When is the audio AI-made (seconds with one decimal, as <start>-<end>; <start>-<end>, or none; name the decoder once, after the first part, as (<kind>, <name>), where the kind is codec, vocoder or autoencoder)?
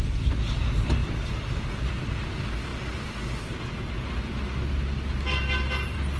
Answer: 1.0-1.9 (vocoder, BigVGAN v2)